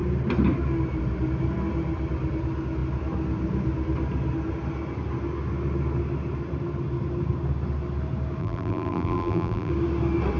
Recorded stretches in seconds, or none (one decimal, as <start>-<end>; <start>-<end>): 0.0-8.4; 9.7-10.4